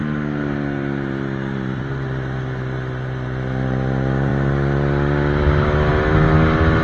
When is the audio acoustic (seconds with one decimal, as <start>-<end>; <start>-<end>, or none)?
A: 0.0-6.8